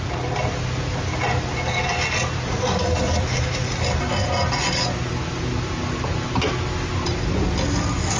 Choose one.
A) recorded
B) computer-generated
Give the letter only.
A